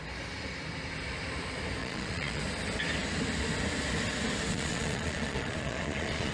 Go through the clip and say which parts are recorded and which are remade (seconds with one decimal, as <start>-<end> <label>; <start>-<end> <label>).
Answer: 0.0-1.8 recorded; 1.8-2.4 remade; 2.4-4.5 recorded; 4.5-6.3 remade